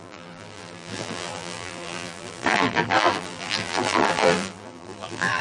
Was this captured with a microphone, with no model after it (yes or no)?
no